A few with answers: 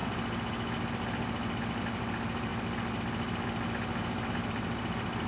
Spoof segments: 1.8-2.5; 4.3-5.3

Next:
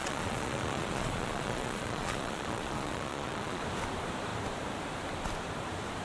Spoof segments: 0.0-3.6

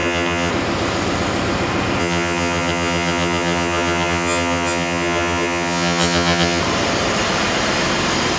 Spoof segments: 0.0-0.5; 2.0-6.6

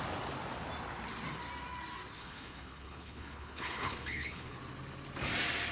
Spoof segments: 2.2-4.6